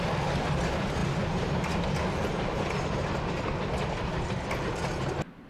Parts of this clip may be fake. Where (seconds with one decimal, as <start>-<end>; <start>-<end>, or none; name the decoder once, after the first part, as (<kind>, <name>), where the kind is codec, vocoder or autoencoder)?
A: none